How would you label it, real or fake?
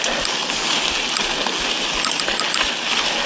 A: real